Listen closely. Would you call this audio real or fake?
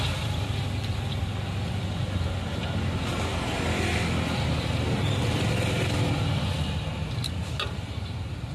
real